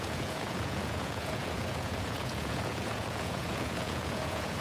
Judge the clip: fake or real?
fake